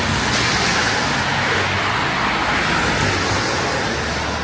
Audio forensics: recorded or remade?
recorded